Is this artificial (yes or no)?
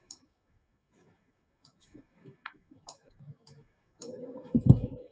yes